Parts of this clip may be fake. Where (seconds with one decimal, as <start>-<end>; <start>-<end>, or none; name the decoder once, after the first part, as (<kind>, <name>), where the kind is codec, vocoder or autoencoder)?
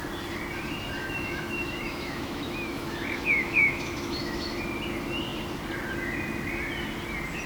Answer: 1.0-4.6 (autoencoder, DAC-VAE)